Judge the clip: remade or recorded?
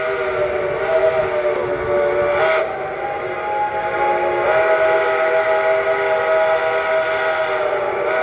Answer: recorded